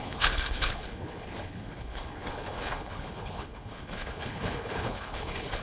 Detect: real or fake fake